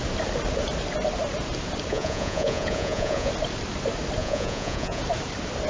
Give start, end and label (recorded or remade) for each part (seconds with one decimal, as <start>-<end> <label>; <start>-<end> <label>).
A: 0.0-1.9 recorded; 1.9-3.3 remade; 3.3-4.2 recorded; 4.2-5.0 remade; 5.0-5.7 recorded

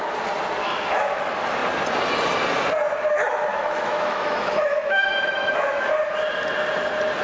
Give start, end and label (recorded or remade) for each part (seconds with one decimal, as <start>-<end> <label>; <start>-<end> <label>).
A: 0.0-0.6 recorded; 0.6-1.2 remade; 1.2-3.5 recorded; 3.5-5.9 remade; 5.9-7.2 recorded

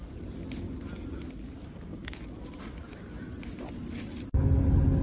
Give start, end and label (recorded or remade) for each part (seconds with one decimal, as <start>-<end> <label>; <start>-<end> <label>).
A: 0.0-1.9 recorded; 1.9-2.9 remade; 2.9-5.0 recorded

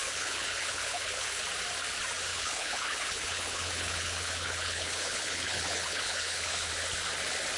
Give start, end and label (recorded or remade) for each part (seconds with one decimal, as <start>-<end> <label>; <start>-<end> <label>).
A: 0.0-1.4 remade; 1.4-2.3 recorded; 2.3-6.7 remade; 6.7-7.6 recorded